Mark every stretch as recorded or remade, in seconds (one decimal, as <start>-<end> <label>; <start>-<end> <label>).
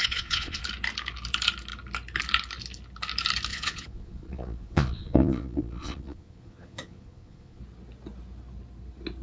0.0-0.6 remade; 0.6-3.5 recorded; 3.5-7.6 remade; 7.6-9.2 recorded